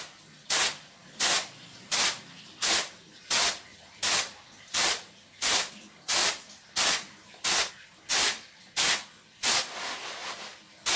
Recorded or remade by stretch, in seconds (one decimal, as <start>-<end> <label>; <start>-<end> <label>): 0.0-1.0 recorded; 1.0-3.1 remade; 3.1-3.7 recorded; 3.7-5.7 remade; 5.7-6.2 recorded; 6.2-7.7 remade; 7.7-8.1 recorded; 8.1-8.9 remade; 8.9-11.0 recorded